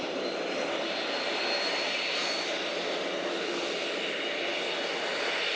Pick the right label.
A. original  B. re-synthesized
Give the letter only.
A